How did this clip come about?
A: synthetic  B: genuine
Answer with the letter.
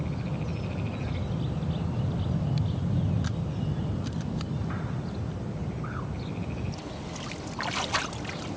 B